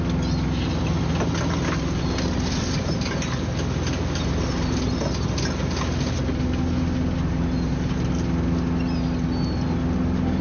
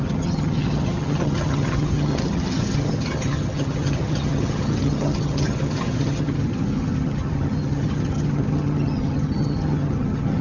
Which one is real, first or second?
first